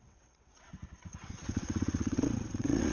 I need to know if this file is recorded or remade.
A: remade